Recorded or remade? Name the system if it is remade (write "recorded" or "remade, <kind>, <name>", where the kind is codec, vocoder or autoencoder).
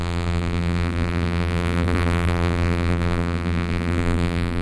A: remade, vocoder, BigVGAN v2